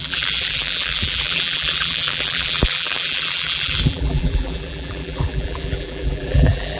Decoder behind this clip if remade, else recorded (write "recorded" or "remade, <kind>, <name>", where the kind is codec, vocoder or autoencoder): remade, vocoder, BigVGAN v2